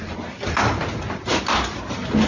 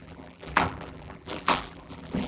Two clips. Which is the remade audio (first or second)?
second